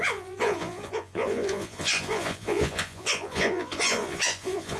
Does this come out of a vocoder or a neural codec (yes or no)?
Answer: yes